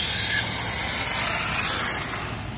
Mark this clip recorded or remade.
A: recorded